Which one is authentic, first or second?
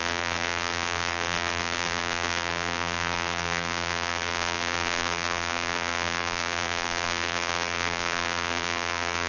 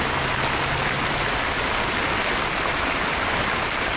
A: second